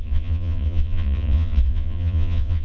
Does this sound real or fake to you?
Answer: fake